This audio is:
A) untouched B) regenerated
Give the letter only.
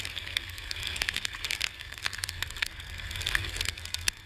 B